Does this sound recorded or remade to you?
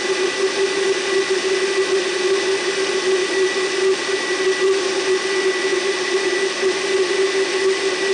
recorded